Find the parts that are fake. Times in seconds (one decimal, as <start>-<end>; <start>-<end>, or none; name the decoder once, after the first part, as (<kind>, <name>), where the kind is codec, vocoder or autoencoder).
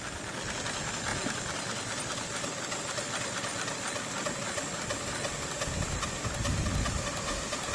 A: none